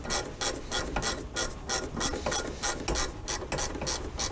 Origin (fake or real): real